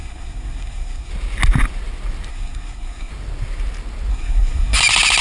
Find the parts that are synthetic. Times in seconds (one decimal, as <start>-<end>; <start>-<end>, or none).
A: 0.0-1.1; 2.3-3.1; 4.1-4.8